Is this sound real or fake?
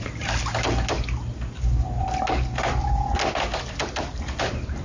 real